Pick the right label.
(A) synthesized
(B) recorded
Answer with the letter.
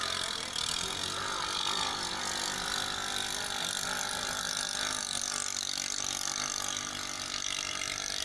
B